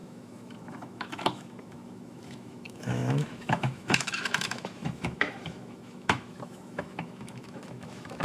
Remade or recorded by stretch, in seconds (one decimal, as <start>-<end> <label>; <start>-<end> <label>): 0.0-8.2 remade